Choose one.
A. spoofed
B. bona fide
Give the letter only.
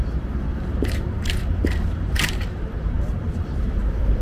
A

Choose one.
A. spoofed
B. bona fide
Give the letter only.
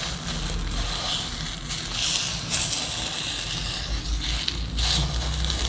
B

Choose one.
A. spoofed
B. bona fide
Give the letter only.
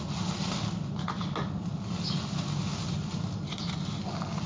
B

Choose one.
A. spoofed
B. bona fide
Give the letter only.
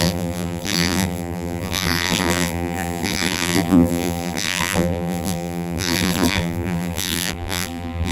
A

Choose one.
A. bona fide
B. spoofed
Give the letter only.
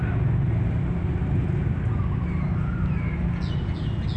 A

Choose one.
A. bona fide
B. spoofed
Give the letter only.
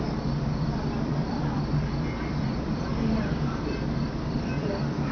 B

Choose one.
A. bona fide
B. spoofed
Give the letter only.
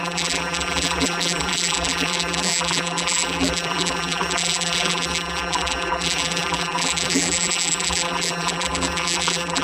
B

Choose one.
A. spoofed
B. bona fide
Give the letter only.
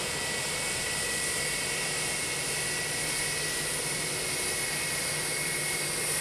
B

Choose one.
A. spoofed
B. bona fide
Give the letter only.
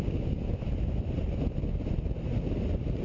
B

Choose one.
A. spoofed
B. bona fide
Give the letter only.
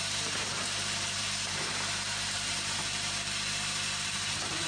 A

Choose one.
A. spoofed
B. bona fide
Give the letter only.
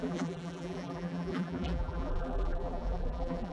A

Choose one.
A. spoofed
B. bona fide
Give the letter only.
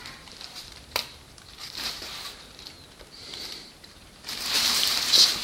A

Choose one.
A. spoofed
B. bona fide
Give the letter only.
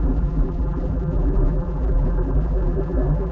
A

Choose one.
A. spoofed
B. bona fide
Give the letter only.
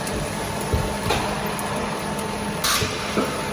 B